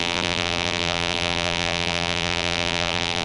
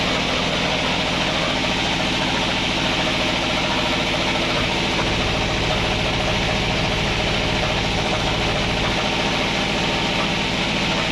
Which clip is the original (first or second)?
second